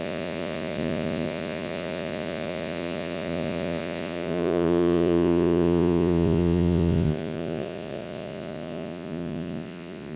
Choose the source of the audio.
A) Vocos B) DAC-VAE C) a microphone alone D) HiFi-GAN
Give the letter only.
A